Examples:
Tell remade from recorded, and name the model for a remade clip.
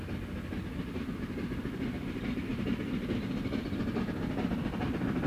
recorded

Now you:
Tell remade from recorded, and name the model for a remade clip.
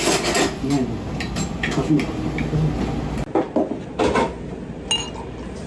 recorded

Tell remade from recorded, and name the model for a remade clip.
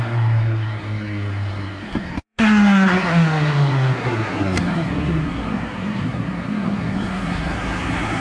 remade, codec, SNAC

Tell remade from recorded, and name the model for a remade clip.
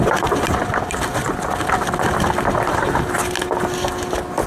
recorded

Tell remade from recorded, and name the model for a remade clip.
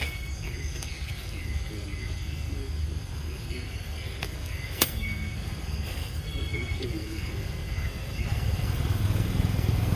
remade, codec, SNAC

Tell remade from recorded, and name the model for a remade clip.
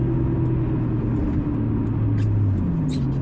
recorded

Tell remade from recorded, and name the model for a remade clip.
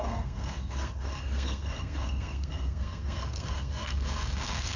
remade, codec, SNAC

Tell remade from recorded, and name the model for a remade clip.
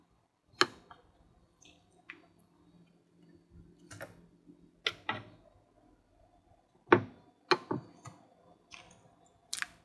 recorded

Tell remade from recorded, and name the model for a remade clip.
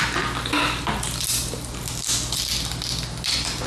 recorded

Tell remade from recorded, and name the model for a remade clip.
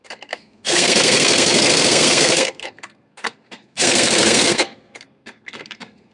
remade, codec, SNAC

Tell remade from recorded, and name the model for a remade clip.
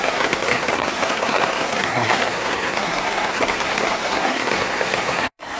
remade, codec, SNAC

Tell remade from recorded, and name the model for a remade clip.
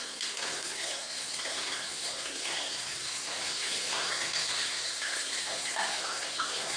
remade, codec, SNAC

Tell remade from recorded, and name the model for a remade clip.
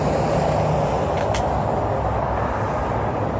recorded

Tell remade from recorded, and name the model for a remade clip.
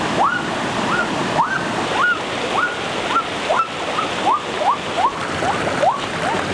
recorded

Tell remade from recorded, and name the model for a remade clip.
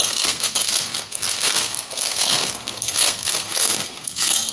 remade, codec, SNAC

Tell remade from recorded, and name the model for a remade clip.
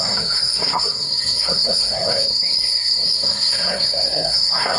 remade, codec, SNAC